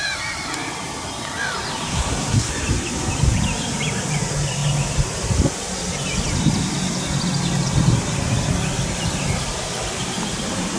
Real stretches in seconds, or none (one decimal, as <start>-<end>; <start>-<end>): 0.0-1.9; 2.5-10.8